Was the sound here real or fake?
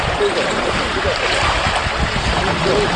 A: real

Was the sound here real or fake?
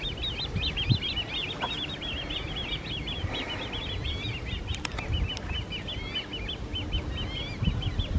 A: real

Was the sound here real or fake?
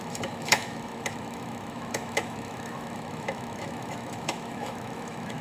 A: fake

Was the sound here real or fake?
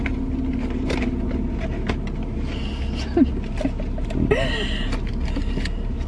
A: real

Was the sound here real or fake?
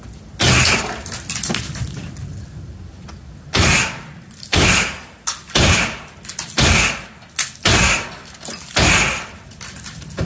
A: real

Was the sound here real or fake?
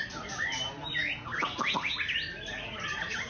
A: real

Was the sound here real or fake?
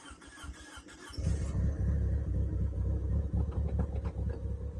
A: real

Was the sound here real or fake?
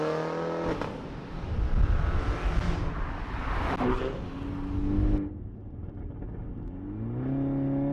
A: real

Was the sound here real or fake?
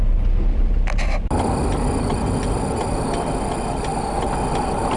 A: real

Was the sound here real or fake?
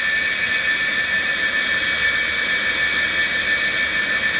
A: real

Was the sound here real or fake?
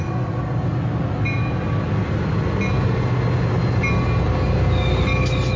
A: real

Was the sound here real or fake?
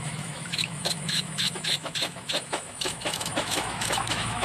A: fake